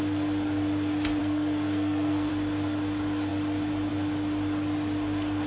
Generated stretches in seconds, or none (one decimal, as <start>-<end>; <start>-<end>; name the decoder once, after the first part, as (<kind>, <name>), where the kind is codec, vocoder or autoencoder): 1.2-2.3 (codec, SNAC)

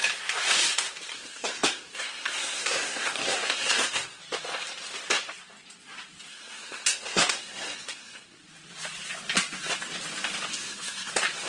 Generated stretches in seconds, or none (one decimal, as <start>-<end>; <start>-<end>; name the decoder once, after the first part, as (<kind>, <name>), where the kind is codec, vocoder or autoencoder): 1.1-4.2 (codec, SNAC); 6.3-8.4; 10.5-11.1

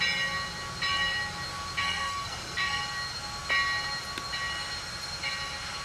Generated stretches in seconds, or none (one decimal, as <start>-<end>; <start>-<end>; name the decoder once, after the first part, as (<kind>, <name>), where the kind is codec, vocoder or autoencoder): 1.8-2.8 (codec, SNAC)